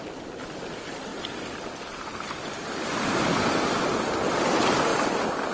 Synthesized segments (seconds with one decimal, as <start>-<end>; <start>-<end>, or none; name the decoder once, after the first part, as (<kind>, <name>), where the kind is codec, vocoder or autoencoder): 0.0-4.9 (vocoder, BigVGAN v2)